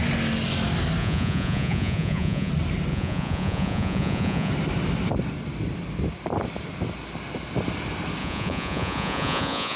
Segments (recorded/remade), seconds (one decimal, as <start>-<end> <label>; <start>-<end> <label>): 0.0-1.0 recorded; 1.0-2.5 remade; 2.5-2.9 recorded; 2.9-4.5 remade; 4.5-8.2 recorded; 8.2-9.8 remade